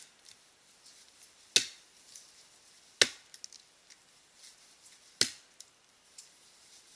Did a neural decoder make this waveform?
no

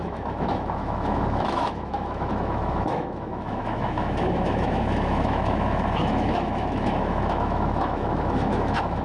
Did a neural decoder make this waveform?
yes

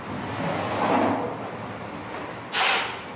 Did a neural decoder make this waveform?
no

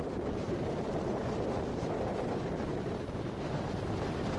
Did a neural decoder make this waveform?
yes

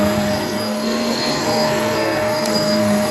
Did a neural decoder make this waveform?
yes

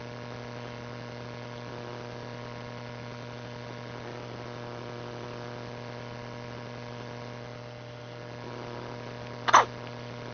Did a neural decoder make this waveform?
no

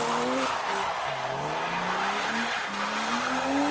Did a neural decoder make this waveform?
no